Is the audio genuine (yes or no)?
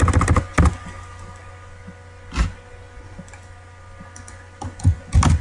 yes